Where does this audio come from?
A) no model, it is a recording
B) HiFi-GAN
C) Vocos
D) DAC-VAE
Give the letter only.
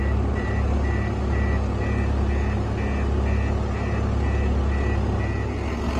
A